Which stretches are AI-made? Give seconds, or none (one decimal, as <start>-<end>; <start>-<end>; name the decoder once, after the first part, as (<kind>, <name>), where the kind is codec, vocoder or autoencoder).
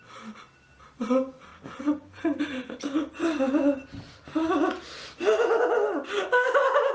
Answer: none